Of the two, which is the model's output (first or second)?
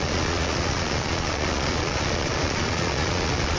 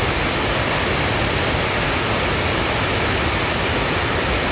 first